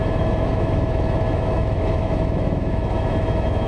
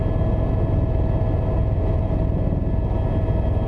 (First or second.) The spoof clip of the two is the first